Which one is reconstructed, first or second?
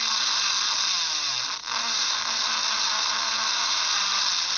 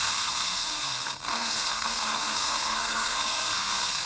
second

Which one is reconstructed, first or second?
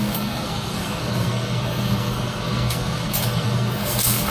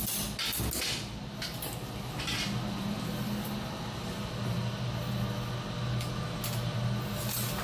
first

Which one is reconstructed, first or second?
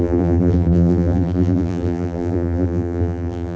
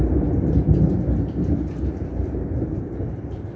first